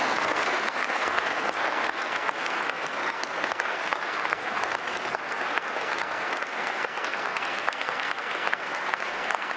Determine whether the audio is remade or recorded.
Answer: remade